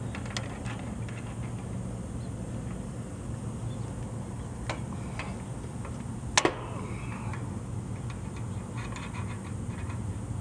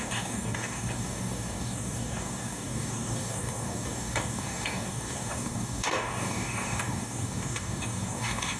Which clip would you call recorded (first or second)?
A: first